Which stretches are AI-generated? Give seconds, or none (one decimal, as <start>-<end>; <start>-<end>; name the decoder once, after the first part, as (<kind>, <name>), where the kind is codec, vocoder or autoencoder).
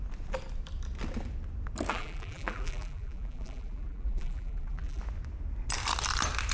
1.9-5.0 (vocoder, BigVGAN v2)